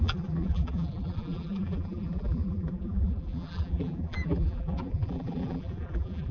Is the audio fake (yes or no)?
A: yes